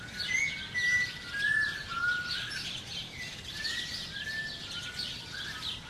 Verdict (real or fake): real